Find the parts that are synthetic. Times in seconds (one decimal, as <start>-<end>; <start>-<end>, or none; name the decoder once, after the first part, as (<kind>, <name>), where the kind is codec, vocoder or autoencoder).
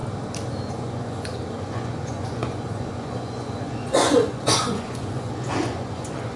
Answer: 0.6-6.4 (vocoder, Vocos)